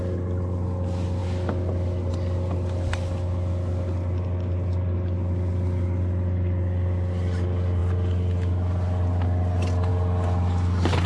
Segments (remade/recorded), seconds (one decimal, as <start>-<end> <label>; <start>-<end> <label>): 0.0-11.1 recorded